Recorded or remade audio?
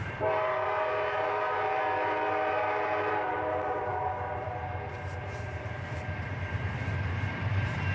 remade